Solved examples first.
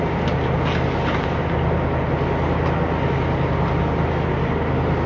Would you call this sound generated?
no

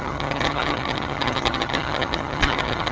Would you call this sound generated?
yes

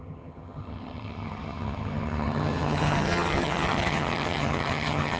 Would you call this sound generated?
yes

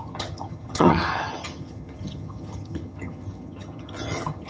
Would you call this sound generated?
yes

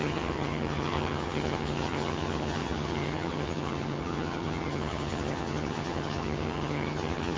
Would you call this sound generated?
yes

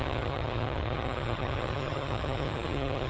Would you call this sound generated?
yes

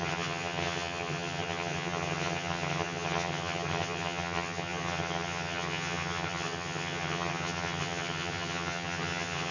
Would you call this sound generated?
yes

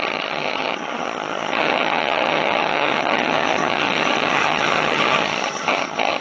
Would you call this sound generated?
yes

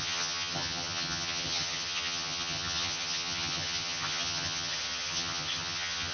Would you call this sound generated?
yes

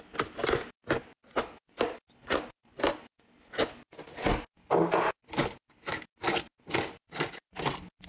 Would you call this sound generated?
no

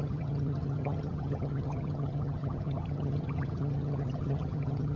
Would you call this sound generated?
yes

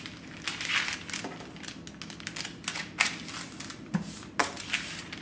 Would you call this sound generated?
no